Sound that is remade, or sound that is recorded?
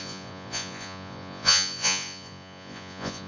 remade